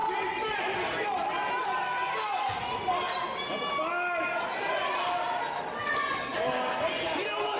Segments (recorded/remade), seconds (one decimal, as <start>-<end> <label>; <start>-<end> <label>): 0.0-7.6 recorded